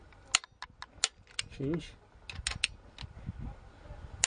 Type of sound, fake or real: real